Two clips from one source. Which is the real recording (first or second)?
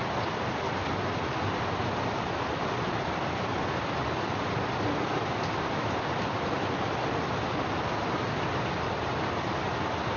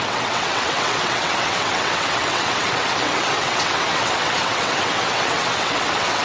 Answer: first